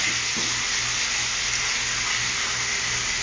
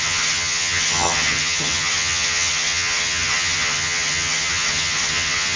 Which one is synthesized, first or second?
second